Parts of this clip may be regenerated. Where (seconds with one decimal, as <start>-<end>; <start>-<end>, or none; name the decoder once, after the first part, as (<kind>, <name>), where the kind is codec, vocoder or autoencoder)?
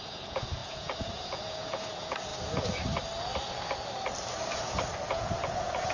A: 0.0-2.3 (vocoder, Vocos); 5.1-5.9